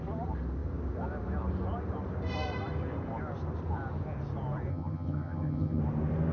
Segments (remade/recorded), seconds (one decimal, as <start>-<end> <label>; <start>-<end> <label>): 0.0-4.7 recorded; 4.7-5.8 remade; 5.8-6.3 recorded